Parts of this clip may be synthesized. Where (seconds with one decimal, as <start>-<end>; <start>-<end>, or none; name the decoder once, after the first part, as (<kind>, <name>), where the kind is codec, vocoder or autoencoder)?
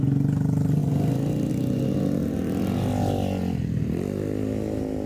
none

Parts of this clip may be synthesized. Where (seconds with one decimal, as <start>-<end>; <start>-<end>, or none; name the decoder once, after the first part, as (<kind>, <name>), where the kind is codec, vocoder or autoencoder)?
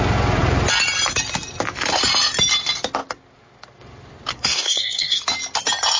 4.3-5.2 (codec, SNAC)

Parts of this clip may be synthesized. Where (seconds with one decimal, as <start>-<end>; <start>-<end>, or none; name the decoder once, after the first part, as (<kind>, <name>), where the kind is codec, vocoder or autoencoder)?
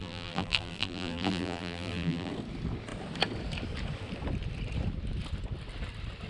0.0-2.3 (vocoder, BigVGAN v2)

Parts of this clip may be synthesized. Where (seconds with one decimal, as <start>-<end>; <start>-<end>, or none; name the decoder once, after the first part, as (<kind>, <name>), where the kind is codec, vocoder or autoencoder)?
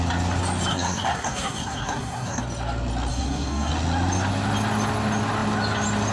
0.7-2.4 (codec, SNAC); 3.1-3.7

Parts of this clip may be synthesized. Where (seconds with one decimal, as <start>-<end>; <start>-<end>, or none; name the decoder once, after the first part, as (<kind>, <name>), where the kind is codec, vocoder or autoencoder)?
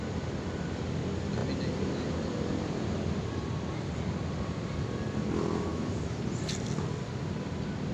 5.7-6.2 (autoencoder, DAC-VAE)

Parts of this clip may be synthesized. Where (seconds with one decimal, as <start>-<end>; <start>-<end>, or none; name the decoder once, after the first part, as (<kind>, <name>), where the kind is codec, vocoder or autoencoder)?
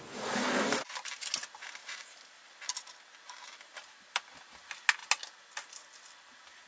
1.8-2.5 (vocoder, Vocos)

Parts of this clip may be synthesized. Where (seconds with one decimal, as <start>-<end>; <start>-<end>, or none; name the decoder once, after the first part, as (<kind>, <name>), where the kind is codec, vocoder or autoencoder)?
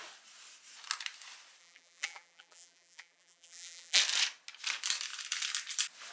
1.6-4.0 (vocoder, BigVGAN v2)